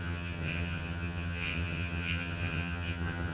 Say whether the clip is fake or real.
fake